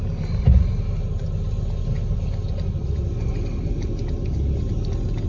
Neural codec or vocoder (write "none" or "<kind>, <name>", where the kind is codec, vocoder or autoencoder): none